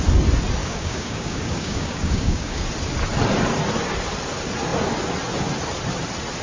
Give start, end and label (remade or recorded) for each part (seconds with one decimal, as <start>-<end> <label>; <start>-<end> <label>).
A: 0.0-0.6 recorded; 0.6-2.6 remade; 2.6-6.4 recorded